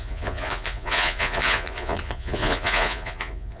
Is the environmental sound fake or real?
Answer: fake